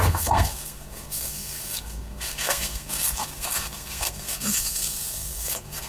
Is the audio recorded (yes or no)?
no